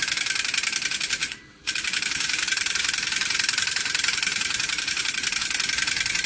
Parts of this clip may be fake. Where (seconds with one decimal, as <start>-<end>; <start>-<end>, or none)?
1.2-5.0